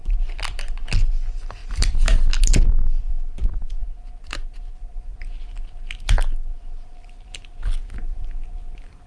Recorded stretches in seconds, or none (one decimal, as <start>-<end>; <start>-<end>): 0.0-1.6; 3.1-3.8; 5.3-6.5